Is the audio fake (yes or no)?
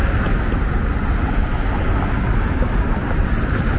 no